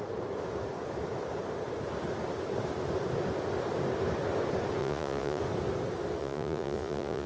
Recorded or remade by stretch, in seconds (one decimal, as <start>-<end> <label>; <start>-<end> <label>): 0.0-4.8 recorded; 4.8-5.4 remade; 5.4-6.2 recorded; 6.2-7.3 remade